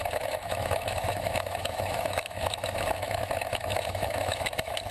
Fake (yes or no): yes